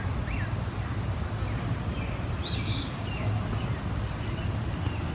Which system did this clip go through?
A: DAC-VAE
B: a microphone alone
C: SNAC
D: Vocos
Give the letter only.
B